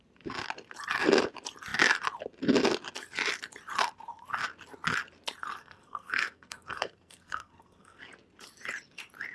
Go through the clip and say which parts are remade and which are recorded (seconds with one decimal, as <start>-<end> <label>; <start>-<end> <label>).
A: 0.0-5.6 recorded; 5.6-8.0 remade; 8.0-9.3 recorded